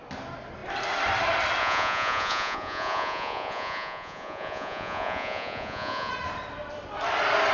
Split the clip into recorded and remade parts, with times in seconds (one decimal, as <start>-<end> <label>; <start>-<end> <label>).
0.0-1.6 recorded; 1.6-6.1 remade; 6.1-7.5 recorded